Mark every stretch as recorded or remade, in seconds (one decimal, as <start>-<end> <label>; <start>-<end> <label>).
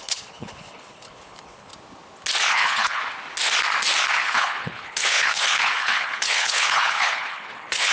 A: 0.0-1.7 remade; 1.7-2.5 recorded; 2.5-3.0 remade; 3.0-4.1 recorded; 4.1-7.9 remade